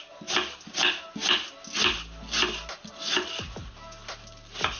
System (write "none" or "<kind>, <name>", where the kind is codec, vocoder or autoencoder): none